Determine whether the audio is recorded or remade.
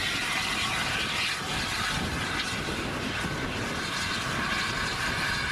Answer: recorded